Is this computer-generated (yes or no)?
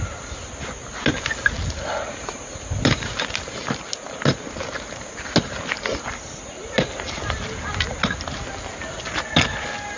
no